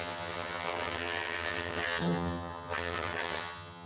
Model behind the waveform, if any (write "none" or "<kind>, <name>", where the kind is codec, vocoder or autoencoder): vocoder, HiFi-GAN